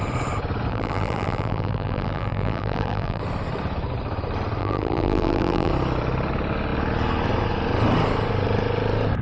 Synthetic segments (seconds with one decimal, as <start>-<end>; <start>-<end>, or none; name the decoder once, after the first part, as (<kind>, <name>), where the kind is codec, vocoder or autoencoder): 0.7-3.2 (vocoder, BigVGAN v2); 4.6-5.7